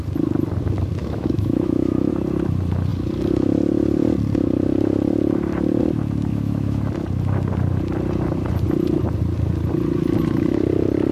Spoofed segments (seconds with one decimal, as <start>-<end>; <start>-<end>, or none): 1.0-2.1; 6.3-6.8

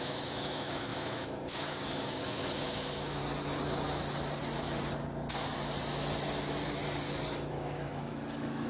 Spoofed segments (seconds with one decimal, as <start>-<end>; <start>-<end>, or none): 0.0-3.2; 7.5-8.7

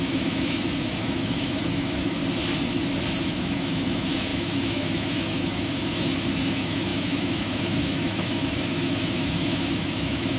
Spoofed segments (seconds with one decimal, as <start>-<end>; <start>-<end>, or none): 0.0-2.2; 3.2-10.4

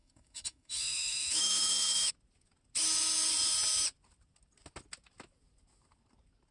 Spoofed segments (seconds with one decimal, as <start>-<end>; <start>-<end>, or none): 0.0-2.1

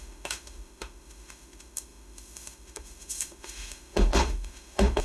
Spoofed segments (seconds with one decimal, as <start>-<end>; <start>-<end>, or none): 0.0-5.0

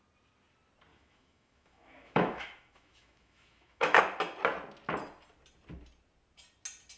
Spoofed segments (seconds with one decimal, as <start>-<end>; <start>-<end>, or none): 0.9-4.0

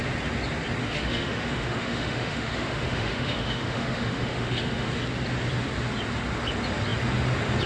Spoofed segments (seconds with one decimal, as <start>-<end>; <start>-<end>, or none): 0.8-5.0